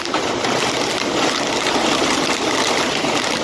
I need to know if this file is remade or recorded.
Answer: recorded